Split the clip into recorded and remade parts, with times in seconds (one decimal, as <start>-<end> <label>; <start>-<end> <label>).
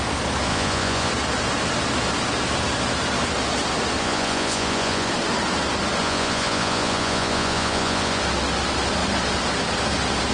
0.0-0.5 recorded; 0.5-1.1 remade; 1.1-4.0 recorded; 4.0-5.1 remade; 5.1-6.0 recorded; 6.0-8.2 remade; 8.2-10.3 recorded